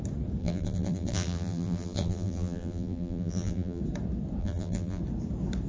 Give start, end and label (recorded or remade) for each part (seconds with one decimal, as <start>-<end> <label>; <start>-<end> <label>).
0.0-0.4 recorded; 0.4-3.8 remade; 3.8-4.4 recorded; 4.4-5.0 remade; 5.0-5.7 recorded